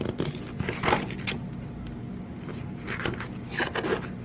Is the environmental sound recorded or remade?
recorded